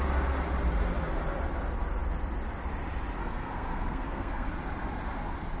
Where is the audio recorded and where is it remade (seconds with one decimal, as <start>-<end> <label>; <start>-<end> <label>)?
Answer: 0.0-3.2 recorded; 3.2-4.5 remade; 4.5-5.6 recorded